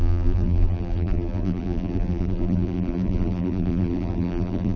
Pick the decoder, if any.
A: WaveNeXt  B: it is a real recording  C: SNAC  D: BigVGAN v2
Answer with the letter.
D